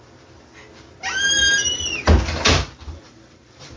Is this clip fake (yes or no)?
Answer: no